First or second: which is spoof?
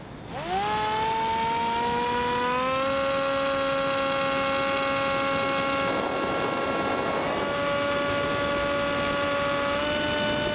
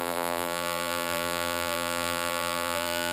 second